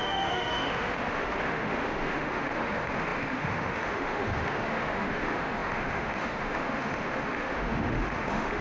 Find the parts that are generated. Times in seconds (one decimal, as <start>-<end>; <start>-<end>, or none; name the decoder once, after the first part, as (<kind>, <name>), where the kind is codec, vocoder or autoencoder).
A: 0.0-8.6 (autoencoder, DAC-VAE)